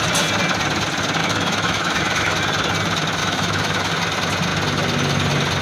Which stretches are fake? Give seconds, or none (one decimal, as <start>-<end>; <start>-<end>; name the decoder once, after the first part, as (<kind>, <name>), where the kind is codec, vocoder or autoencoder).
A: 1.2-2.4 (autoencoder, DAC-VAE); 3.2-3.9